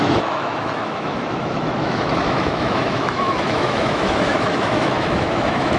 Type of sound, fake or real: fake